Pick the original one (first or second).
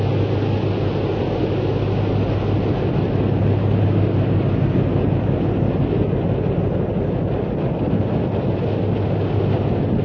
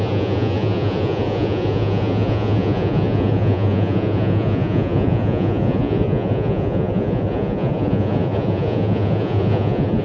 first